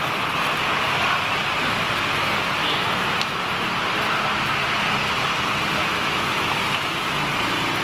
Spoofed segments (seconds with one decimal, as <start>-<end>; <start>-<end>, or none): 2.6-3.4; 5.8-7.3